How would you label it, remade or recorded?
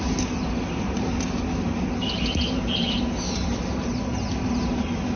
recorded